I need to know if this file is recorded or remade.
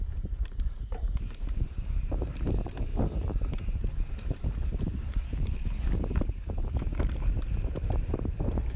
remade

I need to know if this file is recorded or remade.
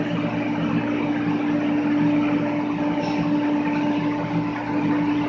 recorded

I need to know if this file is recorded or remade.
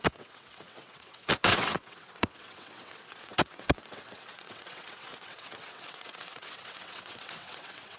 remade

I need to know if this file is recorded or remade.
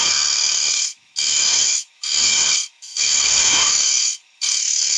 remade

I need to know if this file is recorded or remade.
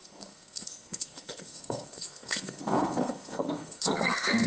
remade